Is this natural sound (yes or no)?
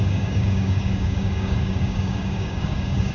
no